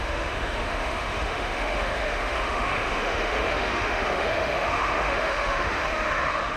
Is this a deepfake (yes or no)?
yes